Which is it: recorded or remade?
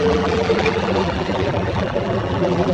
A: remade